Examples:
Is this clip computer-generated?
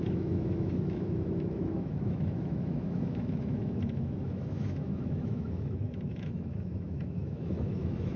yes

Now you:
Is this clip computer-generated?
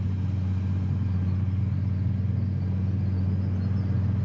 no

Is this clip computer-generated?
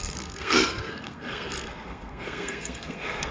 yes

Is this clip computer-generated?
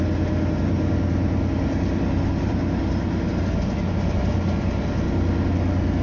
no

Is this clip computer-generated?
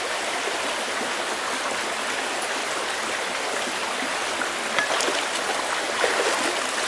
no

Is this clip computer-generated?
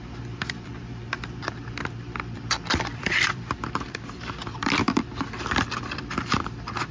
yes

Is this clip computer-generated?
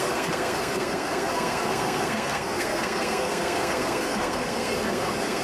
yes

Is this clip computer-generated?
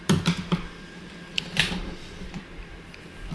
yes